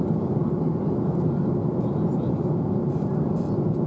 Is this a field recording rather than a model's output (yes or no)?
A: yes